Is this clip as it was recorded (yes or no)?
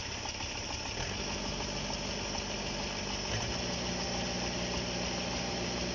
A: yes